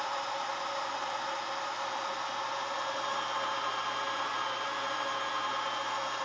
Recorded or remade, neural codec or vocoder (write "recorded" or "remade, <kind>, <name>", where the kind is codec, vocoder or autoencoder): recorded